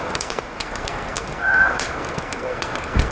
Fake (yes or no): yes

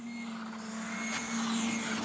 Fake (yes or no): no